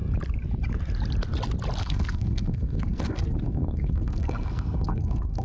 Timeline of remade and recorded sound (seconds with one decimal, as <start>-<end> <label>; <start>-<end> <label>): 0.0-1.8 recorded; 1.8-5.4 remade